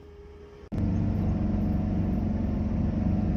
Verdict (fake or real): real